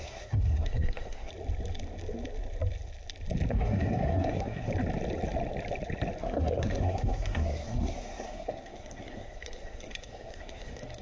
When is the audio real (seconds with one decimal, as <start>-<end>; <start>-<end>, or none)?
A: 1.3-3.5; 4.7-6.2